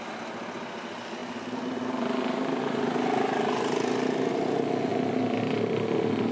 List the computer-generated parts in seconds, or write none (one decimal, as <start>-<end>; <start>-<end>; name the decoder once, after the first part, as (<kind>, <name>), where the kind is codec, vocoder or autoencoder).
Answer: none